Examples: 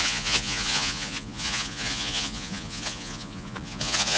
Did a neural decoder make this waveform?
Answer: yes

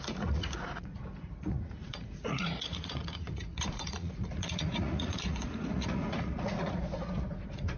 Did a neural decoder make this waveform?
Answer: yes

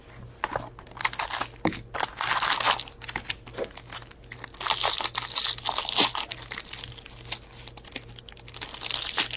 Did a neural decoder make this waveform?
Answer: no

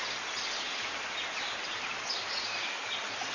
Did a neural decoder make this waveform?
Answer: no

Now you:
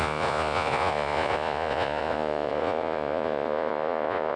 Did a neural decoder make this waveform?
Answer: yes